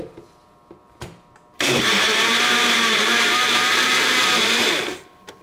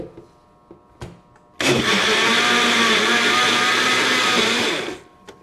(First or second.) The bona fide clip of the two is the second